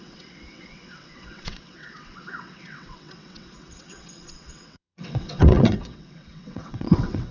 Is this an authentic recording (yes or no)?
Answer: no